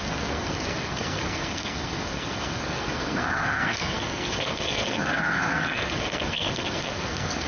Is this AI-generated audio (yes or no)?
yes